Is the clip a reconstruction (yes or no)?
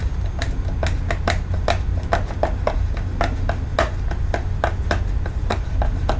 no